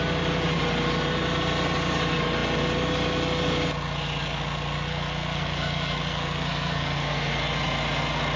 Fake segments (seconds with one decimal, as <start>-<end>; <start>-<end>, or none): 4.9-7.4